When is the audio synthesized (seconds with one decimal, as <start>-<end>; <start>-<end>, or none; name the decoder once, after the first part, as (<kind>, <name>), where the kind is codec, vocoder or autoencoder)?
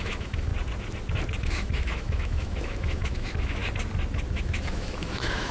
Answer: 0.0-0.5 (autoencoder, DAC-VAE); 1.4-3.6; 4.3-5.5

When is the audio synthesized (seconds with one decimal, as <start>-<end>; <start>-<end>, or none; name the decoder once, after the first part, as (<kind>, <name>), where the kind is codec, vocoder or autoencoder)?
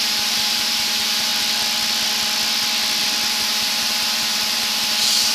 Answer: 0.0-1.3 (vocoder, BigVGAN v2); 3.3-5.3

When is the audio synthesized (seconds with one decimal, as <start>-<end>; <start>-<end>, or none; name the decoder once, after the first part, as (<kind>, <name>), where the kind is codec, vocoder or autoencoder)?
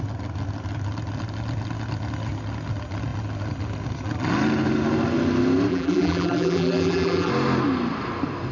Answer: 5.7-7.3 (vocoder, BigVGAN v2)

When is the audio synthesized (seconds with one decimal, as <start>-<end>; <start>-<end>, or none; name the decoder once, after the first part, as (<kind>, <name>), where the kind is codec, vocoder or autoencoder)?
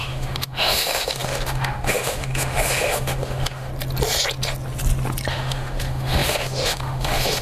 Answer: 0.0-3.7 (autoencoder, DAC-VAE); 5.3-7.4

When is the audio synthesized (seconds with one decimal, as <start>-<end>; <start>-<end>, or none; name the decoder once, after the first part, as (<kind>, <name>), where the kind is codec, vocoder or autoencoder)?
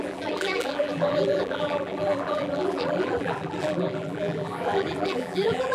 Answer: 0.0-5.7 (vocoder, BigVGAN v2)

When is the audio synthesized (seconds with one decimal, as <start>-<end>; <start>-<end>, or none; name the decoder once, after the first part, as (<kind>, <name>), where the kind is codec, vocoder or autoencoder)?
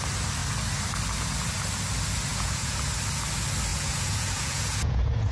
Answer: 2.3-2.9 (vocoder, Vocos); 3.7-5.3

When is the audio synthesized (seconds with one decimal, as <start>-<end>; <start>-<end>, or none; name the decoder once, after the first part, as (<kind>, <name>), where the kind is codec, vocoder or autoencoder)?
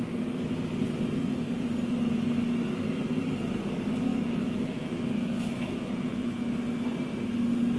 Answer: 4.1-6.5 (autoencoder, DAC-VAE)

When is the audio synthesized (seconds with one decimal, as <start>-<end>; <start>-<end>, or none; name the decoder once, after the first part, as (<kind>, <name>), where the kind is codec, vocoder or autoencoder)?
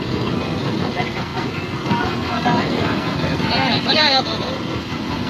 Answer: 0.0-5.3 (codec, SNAC)